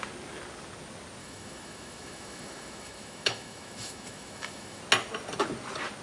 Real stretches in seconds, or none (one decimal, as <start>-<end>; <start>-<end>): 0.0-1.2; 4.8-6.0